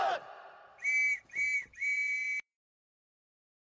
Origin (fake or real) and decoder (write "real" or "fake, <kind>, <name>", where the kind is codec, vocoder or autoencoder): fake, vocoder, BigVGAN v2